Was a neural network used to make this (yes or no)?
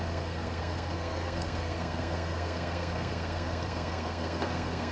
yes